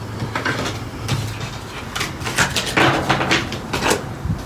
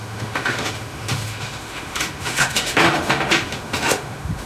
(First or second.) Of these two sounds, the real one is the first